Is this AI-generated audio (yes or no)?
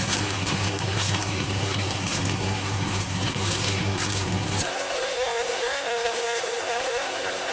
yes